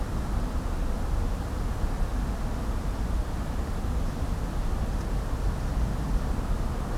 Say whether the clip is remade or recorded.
recorded